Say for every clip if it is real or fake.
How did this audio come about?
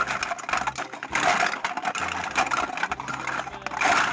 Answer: real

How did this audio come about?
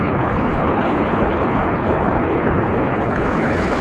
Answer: fake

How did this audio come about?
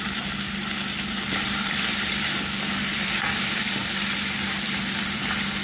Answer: real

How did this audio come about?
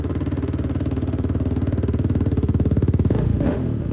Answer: fake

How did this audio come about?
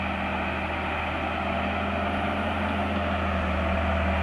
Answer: real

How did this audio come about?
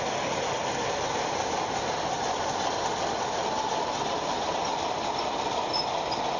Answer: real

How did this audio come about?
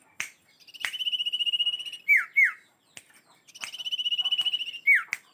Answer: real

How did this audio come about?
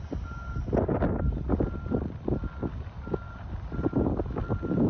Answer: real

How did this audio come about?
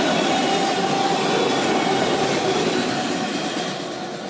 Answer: real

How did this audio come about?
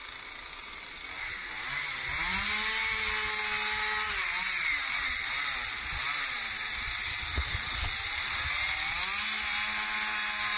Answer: real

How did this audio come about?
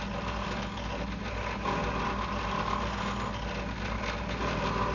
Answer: real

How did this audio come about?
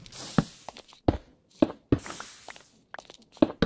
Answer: real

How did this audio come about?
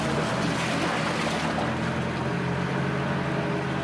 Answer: real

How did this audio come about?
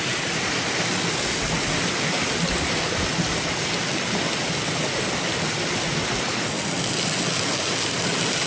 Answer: real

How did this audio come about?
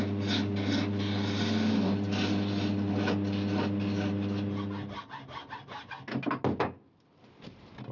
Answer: real